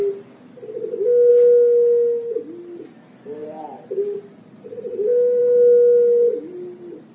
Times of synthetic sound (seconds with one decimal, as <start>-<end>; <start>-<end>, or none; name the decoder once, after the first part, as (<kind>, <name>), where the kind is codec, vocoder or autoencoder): none